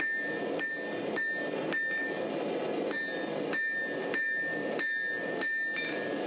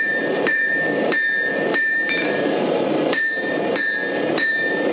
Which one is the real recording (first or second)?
first